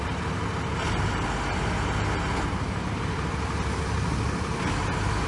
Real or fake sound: real